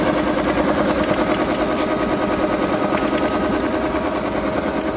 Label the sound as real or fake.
real